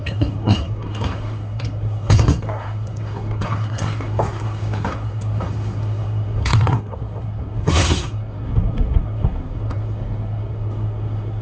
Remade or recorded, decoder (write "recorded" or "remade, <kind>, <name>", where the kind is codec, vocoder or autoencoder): remade, codec, SNAC